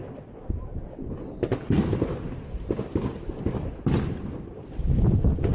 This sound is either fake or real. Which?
real